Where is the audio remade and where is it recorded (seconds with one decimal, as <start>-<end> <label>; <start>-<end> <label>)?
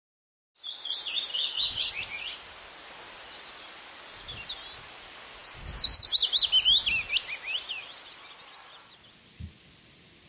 0.0-1.3 recorded; 1.3-1.9 remade; 1.9-10.3 recorded